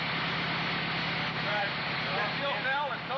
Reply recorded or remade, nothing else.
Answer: recorded